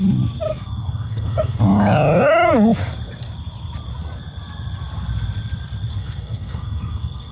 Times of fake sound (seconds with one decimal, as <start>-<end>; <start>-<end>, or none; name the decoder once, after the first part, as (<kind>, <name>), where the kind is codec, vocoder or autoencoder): 0.5-1.6 (codec, SNAC); 6.0-7.3